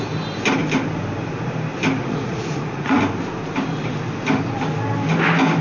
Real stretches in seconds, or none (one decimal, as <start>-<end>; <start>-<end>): 0.0-2.0; 3.0-5.6